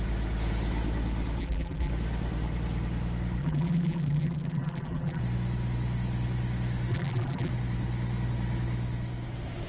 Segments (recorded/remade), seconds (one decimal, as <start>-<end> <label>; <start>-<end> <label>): 0.0-1.4 recorded; 1.4-1.9 remade; 1.9-3.4 recorded; 3.4-5.2 remade; 5.2-6.9 recorded; 6.9-7.5 remade; 7.5-9.7 recorded